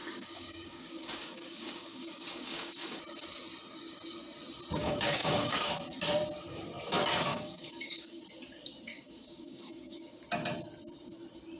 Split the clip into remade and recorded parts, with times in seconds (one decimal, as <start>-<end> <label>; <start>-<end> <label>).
0.0-3.0 remade; 3.0-4.8 recorded; 4.8-5.7 remade; 5.7-7.3 recorded; 7.3-8.2 remade; 8.2-8.9 recorded; 8.9-10.2 remade; 10.2-11.6 recorded